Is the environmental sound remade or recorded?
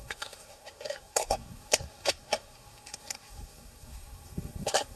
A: remade